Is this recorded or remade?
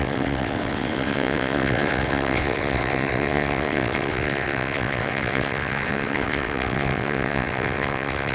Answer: remade